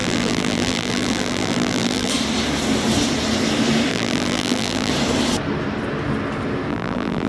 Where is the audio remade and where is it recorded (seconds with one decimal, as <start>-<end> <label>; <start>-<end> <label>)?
0.0-2.1 remade; 2.1-3.9 recorded; 3.9-4.9 remade; 4.9-6.7 recorded; 6.7-7.3 remade